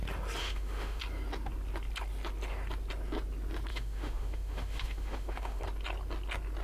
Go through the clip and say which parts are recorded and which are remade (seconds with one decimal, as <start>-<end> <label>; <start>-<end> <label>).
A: 0.0-0.4 recorded; 0.4-1.0 remade; 1.0-3.7 recorded; 3.7-5.6 remade; 5.6-6.6 recorded